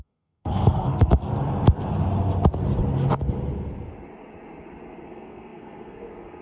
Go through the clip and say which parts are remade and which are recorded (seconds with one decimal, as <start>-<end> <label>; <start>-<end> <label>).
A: 0.0-1.3 remade; 1.3-5.1 recorded; 5.1-6.4 remade